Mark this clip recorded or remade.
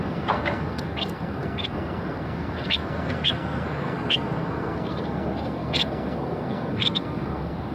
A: remade